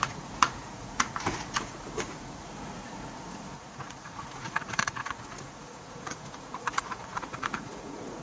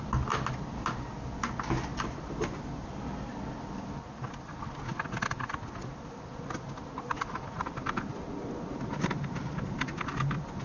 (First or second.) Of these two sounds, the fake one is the first